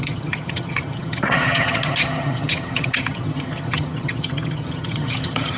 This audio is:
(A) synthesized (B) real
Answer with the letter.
A